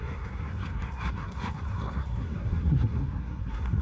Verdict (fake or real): fake